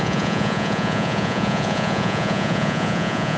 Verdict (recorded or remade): remade